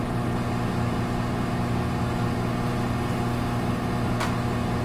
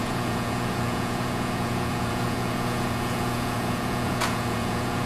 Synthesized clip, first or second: second